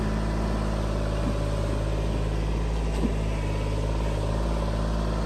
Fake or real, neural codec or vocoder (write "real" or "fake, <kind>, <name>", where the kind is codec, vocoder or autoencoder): real